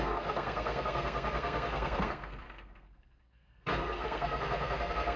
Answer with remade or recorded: remade